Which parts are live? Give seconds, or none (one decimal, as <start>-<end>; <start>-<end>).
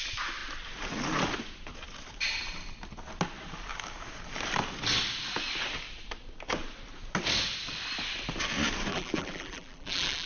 0.0-8.9